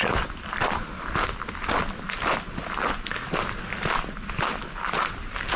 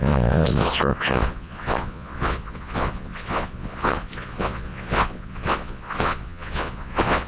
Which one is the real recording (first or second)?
first